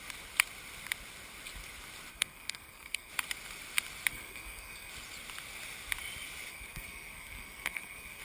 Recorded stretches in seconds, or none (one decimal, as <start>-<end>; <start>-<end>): 0.0-2.1; 3.1-4.1; 4.9-6.5